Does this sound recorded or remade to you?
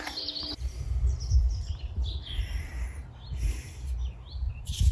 remade